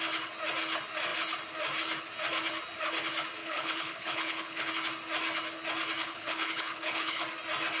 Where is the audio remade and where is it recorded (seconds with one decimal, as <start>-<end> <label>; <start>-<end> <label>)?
0.0-3.4 recorded; 3.4-4.7 remade; 4.7-6.0 recorded; 6.0-7.2 remade; 7.2-7.8 recorded